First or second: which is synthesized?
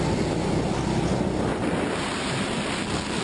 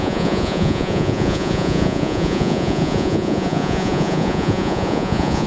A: second